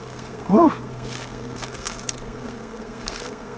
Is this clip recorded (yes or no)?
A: no